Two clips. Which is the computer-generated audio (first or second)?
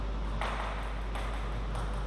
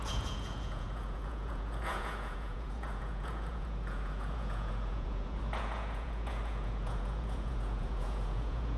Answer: second